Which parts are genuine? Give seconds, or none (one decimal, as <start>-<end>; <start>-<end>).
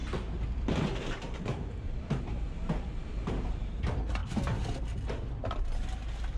3.8-4.2; 5.1-6.4